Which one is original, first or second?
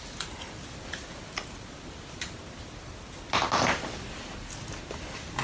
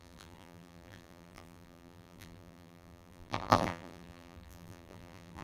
first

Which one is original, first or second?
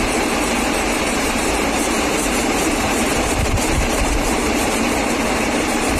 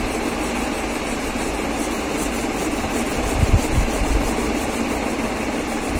second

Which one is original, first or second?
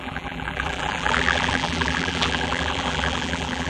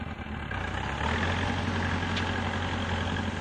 second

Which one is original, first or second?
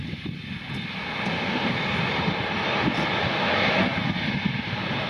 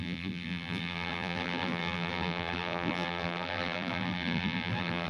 first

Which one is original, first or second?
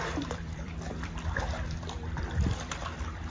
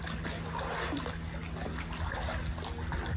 second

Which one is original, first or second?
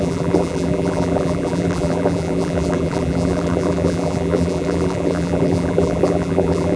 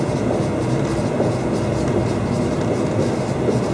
second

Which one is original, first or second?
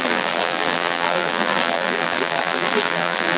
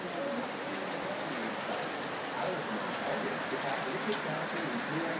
second